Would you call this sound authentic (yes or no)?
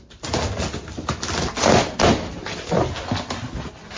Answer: yes